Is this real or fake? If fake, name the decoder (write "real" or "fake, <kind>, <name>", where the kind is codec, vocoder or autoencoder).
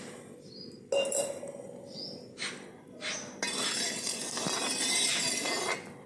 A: real